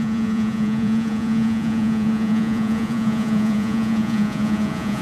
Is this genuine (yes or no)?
no